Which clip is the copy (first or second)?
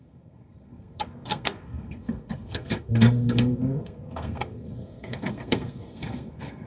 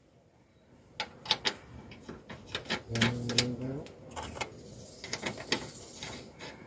first